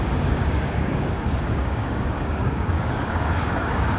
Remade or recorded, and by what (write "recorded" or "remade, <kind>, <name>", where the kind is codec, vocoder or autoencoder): remade, codec, DAC